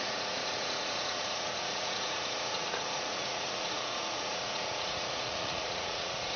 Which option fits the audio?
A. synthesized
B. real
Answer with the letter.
A